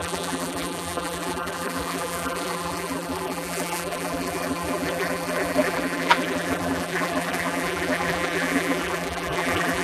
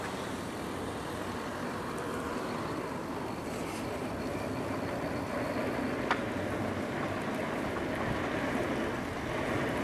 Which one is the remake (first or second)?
first